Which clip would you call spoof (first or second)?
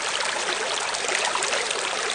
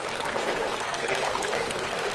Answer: second